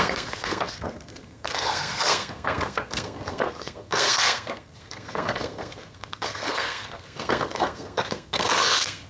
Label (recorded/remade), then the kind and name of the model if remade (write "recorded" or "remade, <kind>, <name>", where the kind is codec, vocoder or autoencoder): remade, codec, SNAC